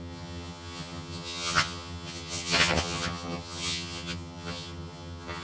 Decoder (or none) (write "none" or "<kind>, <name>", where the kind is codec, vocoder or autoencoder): vocoder, HiFi-GAN